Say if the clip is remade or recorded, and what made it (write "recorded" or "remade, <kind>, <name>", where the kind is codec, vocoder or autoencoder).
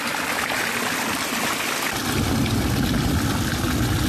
recorded